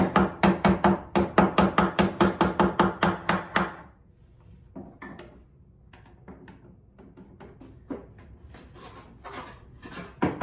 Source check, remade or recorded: recorded